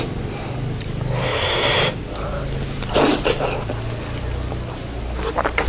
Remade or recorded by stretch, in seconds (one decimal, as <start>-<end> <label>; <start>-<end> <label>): 0.0-5.7 recorded